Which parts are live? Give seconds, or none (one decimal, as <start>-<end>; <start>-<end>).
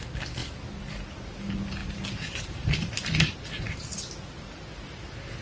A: 0.0-1.8; 3.6-5.4